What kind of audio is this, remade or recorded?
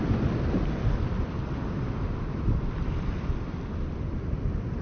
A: recorded